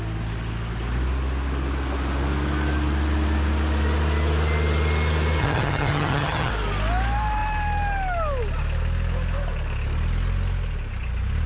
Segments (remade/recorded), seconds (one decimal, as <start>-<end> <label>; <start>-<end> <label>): 0.0-5.4 recorded; 5.4-6.5 remade; 6.5-11.5 recorded